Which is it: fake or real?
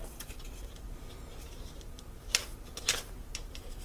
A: fake